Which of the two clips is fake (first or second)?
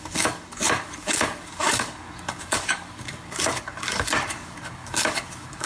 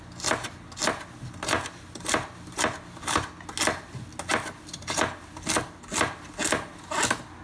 first